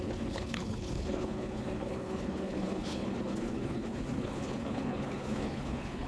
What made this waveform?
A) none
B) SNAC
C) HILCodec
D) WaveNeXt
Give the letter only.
C